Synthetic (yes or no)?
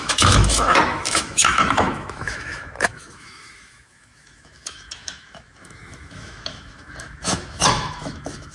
yes